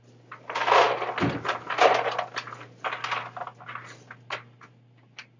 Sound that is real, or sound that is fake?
real